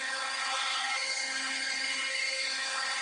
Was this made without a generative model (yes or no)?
no